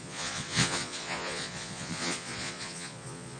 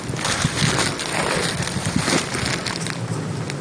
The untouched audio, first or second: second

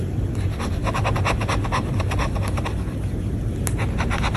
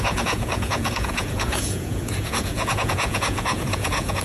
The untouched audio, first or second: first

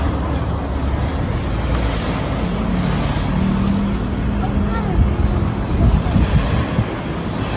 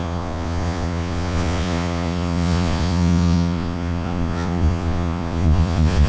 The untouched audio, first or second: first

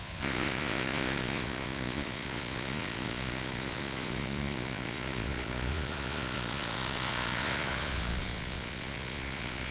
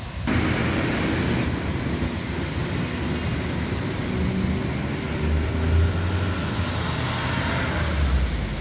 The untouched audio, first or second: second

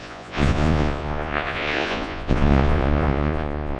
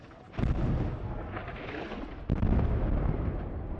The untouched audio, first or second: second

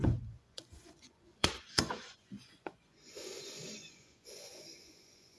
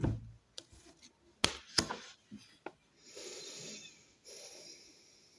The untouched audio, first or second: second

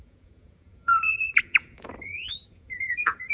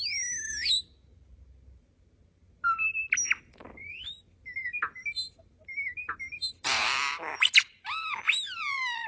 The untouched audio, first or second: second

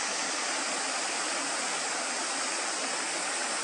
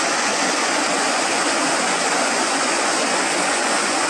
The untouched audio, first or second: first